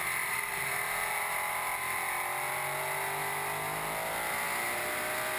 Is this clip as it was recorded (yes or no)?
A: yes